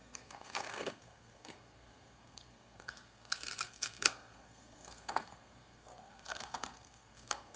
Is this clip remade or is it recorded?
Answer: remade